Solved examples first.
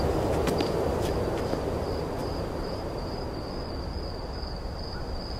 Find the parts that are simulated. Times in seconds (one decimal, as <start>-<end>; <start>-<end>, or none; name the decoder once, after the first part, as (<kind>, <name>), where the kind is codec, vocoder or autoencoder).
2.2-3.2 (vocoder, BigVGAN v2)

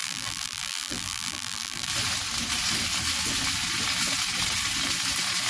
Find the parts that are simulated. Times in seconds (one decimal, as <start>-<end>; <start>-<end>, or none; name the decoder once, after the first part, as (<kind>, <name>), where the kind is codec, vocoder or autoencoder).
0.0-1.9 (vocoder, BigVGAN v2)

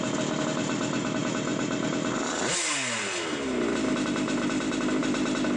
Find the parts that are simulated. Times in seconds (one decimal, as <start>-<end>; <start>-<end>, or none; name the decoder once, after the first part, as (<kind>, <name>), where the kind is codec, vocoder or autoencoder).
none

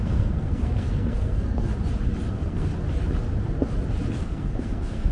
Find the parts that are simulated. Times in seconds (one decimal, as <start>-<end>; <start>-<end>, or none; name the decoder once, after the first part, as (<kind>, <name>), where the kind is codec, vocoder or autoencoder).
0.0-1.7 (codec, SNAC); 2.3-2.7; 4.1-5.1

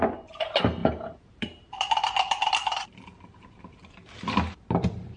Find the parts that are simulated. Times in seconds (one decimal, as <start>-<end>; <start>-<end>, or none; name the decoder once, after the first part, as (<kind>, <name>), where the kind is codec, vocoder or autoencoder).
0.8-3.9 (vocoder, BigVGAN v2)

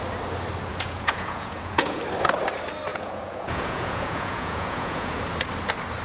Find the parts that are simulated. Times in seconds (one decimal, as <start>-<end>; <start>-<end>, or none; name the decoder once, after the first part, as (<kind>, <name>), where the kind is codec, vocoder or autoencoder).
0.7-2.0 (vocoder, Vocos); 2.9-5.2

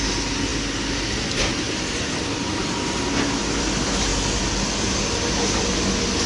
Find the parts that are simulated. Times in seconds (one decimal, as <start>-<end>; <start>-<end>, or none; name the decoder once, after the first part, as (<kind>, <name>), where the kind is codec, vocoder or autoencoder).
none